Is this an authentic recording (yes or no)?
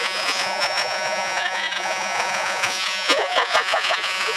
no